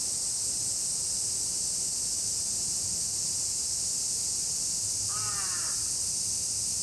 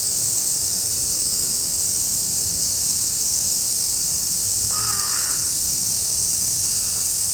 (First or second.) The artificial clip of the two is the second